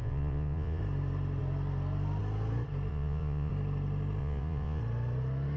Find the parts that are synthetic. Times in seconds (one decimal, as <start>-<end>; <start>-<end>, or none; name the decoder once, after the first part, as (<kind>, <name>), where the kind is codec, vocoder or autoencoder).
0.0-0.8 (vocoder, Vocos); 2.9-3.5; 4.2-4.8